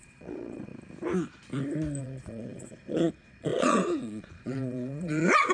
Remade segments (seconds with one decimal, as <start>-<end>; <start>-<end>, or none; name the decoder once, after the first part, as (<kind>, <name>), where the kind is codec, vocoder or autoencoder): 0.0-0.7 (vocoder, Vocos); 2.0-5.5